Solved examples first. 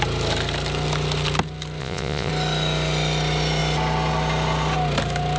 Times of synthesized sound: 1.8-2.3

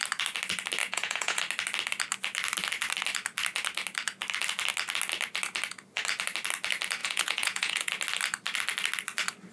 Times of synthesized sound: 0.8-1.4; 7.0-7.9

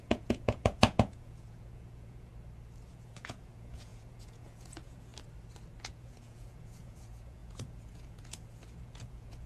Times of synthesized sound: 0.0-2.3; 2.9-5.1; 5.8-9.5

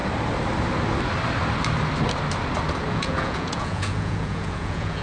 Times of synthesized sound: 2.9-5.0

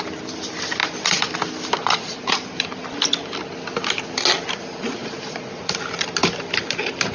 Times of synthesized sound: 1.8-2.3; 5.0-5.6

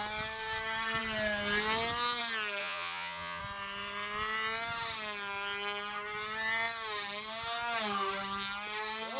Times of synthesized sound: 2.6-3.4

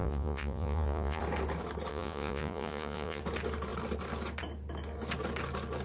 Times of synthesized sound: 0.0-1.2; 1.9-3.2